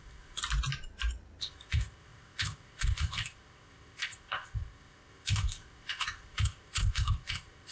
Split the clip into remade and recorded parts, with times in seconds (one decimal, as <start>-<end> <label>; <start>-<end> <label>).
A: 0.0-0.4 remade; 0.4-1.4 recorded; 1.4-7.7 remade